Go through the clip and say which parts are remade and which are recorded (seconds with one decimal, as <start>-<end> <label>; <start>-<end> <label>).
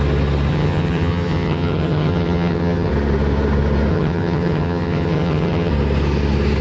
0.0-0.5 recorded; 0.5-2.9 remade; 2.9-3.9 recorded; 3.9-5.7 remade; 5.7-6.6 recorded